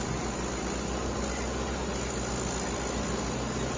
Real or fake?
real